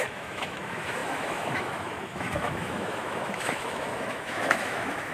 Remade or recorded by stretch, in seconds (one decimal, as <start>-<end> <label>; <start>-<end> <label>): 0.0-5.1 remade